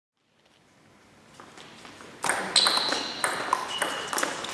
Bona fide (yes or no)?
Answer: yes